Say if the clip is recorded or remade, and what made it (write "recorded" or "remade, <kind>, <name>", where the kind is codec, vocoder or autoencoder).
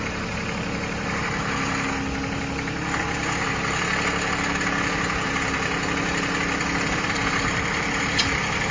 recorded